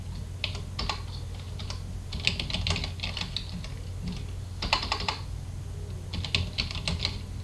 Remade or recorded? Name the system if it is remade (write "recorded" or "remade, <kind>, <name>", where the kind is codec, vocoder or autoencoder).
recorded